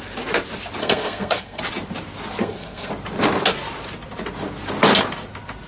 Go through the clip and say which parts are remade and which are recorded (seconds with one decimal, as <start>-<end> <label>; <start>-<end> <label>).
0.0-0.8 recorded; 0.8-1.6 remade; 1.6-2.4 recorded; 2.4-2.9 remade; 2.9-5.7 recorded